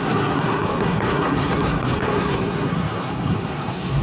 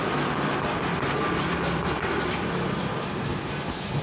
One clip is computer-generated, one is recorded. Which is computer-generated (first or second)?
first